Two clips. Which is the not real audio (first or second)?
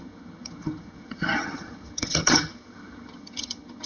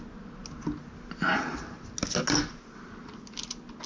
first